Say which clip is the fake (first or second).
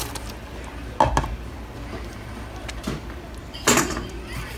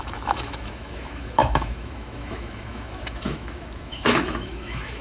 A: second